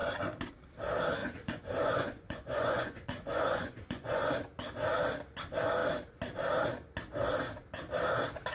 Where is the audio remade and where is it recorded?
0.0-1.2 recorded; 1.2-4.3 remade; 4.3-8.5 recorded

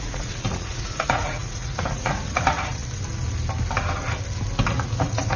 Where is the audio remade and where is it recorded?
0.0-2.8 remade; 2.8-4.7 recorded; 4.7-5.4 remade

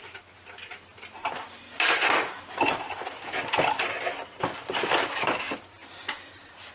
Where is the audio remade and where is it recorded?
0.0-6.7 recorded